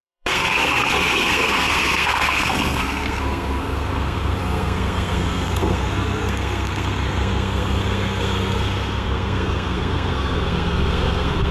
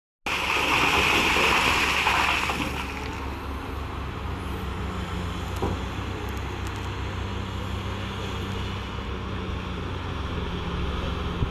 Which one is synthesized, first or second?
first